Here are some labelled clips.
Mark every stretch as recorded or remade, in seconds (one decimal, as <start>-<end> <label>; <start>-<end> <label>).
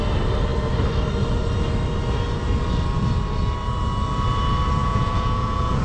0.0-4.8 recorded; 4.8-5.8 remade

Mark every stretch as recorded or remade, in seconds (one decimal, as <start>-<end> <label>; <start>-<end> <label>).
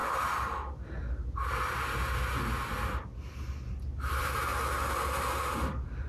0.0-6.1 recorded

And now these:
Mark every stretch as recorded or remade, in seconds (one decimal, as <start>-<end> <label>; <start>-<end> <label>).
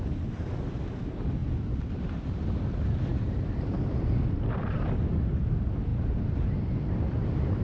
0.0-7.6 recorded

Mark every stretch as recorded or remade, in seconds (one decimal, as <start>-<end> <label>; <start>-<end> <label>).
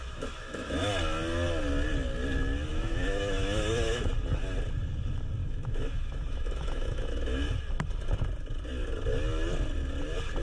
0.0-0.9 remade; 0.9-2.7 recorded; 2.7-4.1 remade; 4.1-5.4 recorded; 5.4-7.4 remade; 7.4-10.4 recorded